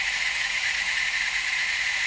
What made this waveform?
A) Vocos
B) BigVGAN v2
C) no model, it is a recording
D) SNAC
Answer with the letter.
A